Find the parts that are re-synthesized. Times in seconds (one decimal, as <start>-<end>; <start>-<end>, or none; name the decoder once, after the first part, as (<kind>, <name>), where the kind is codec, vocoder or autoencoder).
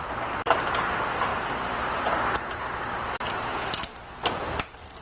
0.0-5.0 (vocoder, BigVGAN v2)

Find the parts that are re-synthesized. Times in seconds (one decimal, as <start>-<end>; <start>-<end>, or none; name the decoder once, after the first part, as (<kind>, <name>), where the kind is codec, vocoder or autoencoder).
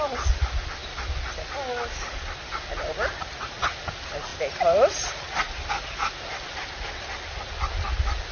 none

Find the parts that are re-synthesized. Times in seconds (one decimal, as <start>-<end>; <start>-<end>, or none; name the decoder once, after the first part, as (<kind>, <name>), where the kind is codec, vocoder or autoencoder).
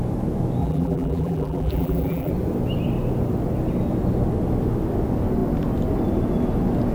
0.6-2.3 (vocoder, BigVGAN v2)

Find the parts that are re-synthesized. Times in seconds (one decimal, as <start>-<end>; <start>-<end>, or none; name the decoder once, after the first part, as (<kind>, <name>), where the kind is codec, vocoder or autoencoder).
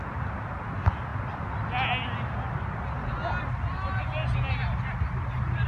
none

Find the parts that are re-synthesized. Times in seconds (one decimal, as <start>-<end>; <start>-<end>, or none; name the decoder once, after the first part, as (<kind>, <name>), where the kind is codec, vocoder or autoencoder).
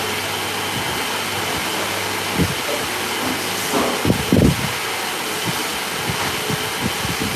none